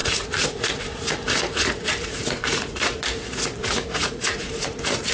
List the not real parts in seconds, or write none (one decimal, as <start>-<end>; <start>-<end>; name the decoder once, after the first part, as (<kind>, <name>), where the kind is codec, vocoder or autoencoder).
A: 0.0-3.0 (vocoder, Vocos); 3.6-5.1